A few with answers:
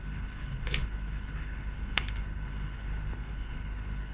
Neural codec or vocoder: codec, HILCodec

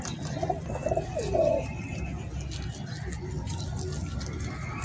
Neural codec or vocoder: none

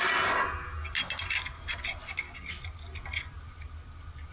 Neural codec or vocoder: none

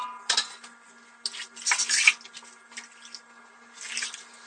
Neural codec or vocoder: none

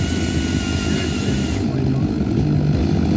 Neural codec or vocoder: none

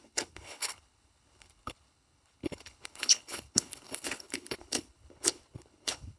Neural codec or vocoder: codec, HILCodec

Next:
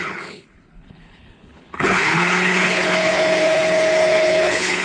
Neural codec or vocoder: codec, HILCodec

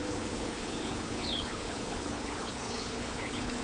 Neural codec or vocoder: codec, HILCodec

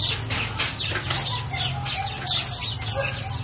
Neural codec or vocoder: none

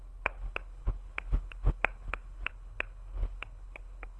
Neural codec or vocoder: codec, HILCodec